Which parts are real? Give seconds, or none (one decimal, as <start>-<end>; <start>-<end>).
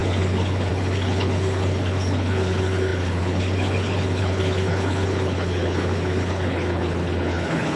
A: none